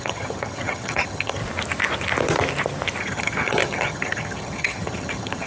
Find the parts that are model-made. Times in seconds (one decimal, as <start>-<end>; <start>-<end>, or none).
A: 0.0-1.4; 3.0-5.5